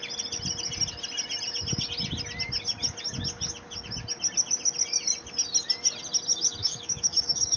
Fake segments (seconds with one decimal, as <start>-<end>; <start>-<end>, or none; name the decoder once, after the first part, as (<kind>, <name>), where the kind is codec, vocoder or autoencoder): 6.6-7.6 (autoencoder, DAC-VAE)